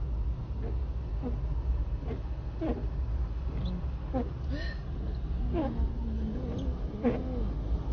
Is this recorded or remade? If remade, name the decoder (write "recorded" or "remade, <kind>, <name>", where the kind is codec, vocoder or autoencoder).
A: recorded